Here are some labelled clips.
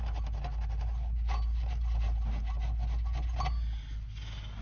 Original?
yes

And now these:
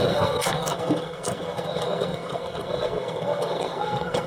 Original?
no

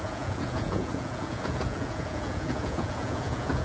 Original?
no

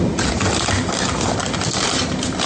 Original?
yes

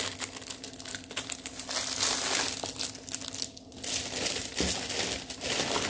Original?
yes